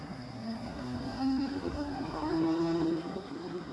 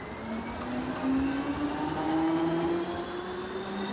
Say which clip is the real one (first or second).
second